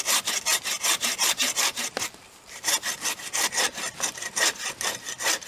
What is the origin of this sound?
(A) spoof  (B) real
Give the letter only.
B